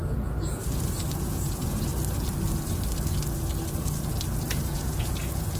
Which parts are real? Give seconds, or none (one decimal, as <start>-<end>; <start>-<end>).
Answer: 0.6-1.2; 1.9-4.7